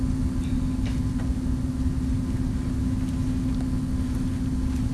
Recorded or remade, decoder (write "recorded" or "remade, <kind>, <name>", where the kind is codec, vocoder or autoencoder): recorded